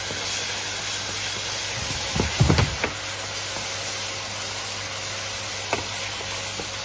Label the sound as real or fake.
real